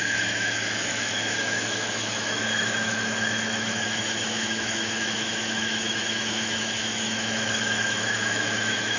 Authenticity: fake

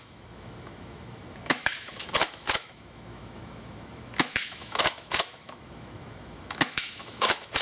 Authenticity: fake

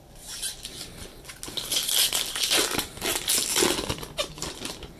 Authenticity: real